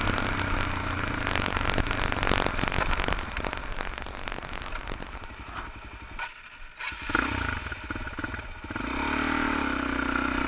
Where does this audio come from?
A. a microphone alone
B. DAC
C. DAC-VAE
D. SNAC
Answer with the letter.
A